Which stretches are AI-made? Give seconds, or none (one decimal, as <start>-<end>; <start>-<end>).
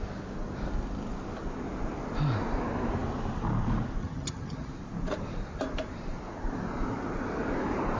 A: 4.0-4.7